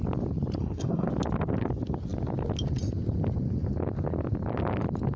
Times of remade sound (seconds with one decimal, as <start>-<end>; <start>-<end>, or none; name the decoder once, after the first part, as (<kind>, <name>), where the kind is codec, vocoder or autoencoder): 0.6-1.1 (codec, SNAC)